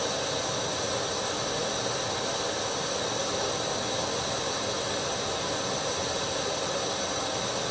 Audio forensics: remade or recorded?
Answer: recorded